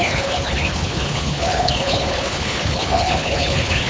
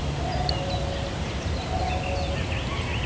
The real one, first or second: second